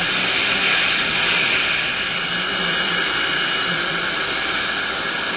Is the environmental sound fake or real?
fake